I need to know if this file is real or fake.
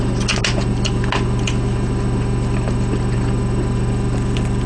real